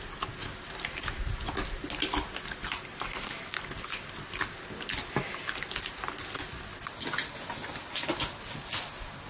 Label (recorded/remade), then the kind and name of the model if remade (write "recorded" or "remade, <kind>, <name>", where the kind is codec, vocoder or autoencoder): recorded